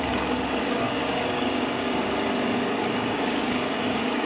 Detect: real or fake fake